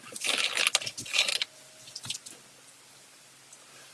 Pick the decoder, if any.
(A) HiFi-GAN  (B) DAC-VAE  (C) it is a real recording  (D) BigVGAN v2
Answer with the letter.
C